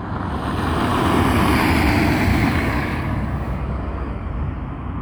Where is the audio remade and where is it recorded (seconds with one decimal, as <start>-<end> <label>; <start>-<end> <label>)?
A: 0.0-2.3 recorded; 2.3-4.3 remade; 4.3-5.0 recorded